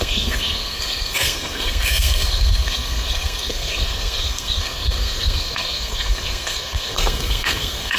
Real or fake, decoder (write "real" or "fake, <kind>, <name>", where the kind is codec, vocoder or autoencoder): fake, codec, SNAC